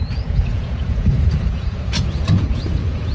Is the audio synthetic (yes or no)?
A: yes